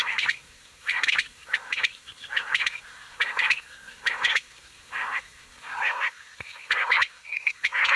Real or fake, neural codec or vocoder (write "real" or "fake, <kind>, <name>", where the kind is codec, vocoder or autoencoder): fake, codec, SNAC